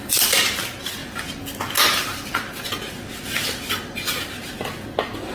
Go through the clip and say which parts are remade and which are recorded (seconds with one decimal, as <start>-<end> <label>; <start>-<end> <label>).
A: 0.0-5.3 recorded